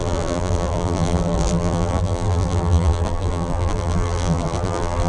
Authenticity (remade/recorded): remade